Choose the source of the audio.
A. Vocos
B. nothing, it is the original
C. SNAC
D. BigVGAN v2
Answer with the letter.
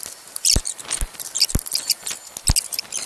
B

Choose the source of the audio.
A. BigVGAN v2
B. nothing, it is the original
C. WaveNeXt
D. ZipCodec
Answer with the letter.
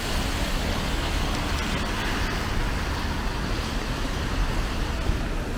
B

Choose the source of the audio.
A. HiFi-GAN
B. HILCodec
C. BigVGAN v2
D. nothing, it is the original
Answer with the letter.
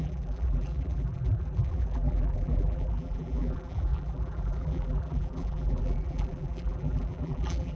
C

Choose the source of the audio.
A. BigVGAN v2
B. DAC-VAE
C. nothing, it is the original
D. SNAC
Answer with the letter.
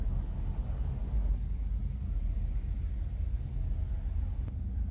C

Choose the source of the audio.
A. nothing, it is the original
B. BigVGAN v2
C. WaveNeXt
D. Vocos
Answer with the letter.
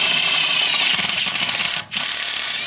B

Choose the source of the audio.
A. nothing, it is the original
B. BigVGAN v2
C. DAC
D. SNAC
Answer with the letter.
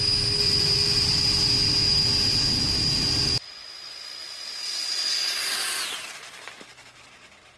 A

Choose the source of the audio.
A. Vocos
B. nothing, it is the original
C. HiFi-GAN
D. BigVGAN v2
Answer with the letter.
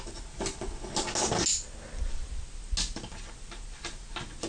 B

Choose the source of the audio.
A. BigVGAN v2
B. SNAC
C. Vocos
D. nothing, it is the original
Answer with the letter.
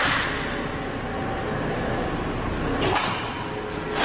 D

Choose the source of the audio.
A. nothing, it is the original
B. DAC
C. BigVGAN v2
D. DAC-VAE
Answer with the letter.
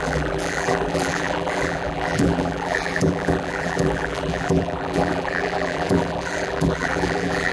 C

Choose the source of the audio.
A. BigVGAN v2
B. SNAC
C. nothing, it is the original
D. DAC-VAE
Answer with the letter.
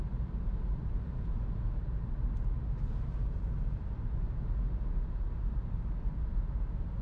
A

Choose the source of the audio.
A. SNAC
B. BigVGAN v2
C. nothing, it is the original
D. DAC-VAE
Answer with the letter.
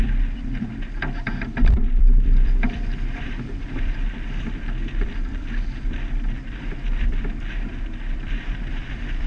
B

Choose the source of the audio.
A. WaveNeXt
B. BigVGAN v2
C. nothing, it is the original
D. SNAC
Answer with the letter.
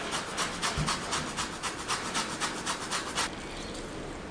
C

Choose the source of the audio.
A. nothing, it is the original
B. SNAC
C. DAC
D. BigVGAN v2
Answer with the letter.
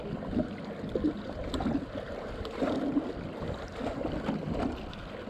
A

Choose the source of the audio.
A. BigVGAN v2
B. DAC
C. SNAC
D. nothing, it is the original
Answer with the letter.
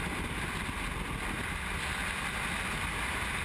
D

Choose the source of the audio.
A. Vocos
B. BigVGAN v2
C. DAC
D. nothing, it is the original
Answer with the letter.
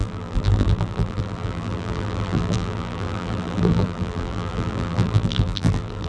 B